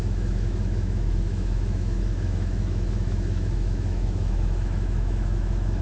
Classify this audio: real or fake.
fake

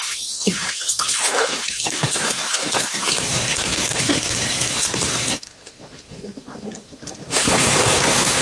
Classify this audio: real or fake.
fake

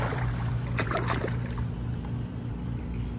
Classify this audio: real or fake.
fake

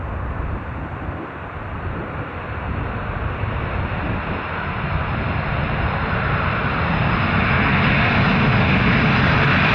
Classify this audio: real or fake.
real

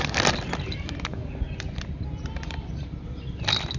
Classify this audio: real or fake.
real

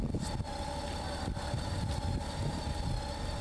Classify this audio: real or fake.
real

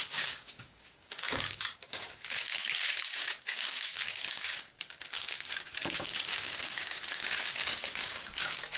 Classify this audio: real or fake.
fake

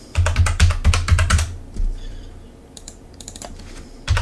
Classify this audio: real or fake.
fake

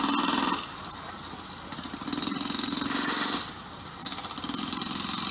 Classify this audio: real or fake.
real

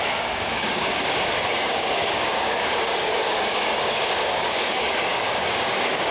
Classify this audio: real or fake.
fake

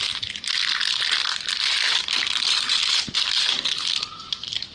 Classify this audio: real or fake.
real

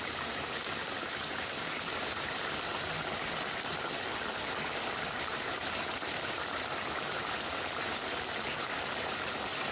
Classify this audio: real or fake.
fake